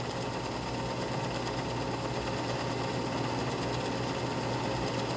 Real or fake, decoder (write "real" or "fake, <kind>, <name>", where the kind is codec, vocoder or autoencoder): real